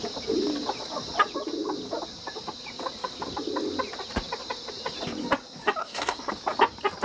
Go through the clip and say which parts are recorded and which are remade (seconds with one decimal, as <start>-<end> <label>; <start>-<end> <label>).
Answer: 0.0-5.8 recorded; 5.8-6.3 remade; 6.3-7.0 recorded